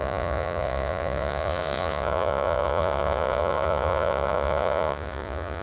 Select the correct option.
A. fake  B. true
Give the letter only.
A